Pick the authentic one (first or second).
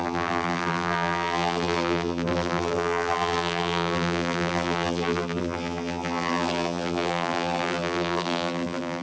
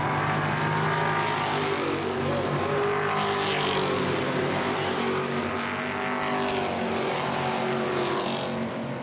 second